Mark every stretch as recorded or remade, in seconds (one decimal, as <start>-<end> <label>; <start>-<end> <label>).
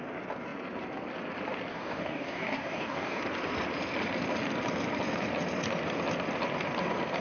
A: 0.0-1.7 recorded; 1.7-3.2 remade; 3.2-7.2 recorded